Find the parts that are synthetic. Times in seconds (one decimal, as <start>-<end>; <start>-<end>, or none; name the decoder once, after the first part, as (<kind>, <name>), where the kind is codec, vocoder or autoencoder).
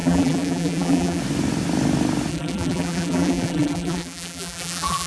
0.0-1.2 (vocoder, BigVGAN v2); 2.3-5.1